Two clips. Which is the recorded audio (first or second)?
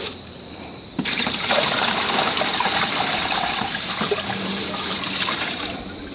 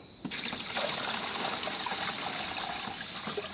second